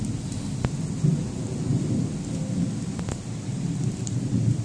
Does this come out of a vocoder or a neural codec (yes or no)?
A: no